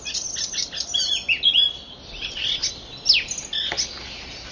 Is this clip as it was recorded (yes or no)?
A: yes